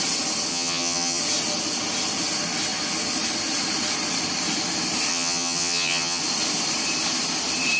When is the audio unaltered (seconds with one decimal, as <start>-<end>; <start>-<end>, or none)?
0.0-0.5; 1.2-5.1; 6.2-7.8